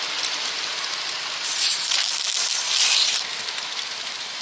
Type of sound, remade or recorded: remade